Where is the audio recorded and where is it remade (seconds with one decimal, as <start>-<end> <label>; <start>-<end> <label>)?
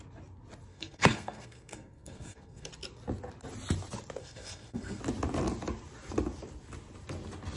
0.0-0.7 recorded; 0.7-2.7 remade; 2.7-4.2 recorded; 4.2-5.0 remade; 5.0-7.6 recorded